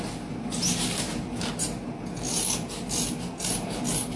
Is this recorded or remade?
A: recorded